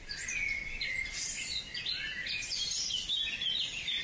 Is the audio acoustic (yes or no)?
yes